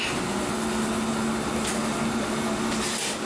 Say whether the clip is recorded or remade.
recorded